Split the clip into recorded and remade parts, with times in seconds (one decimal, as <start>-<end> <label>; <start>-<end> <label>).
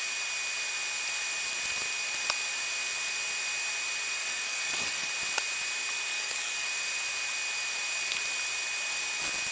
0.0-4.2 recorded; 4.2-5.1 remade; 5.1-6.1 recorded; 6.1-6.7 remade; 6.7-9.5 recorded